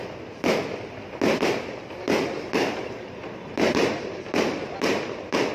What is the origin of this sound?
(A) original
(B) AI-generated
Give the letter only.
A